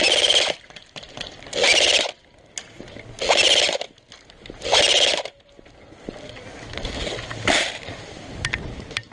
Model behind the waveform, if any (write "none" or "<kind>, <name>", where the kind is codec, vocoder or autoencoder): none